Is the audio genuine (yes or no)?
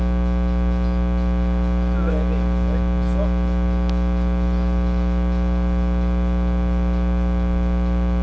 yes